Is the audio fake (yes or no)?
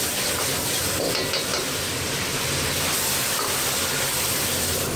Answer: no